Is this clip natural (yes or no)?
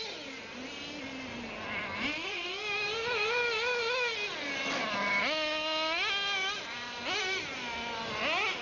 yes